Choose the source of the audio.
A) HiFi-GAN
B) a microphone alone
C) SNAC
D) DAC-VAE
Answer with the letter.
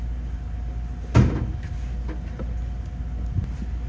B